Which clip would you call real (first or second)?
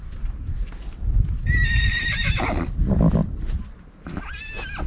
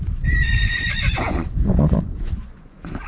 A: first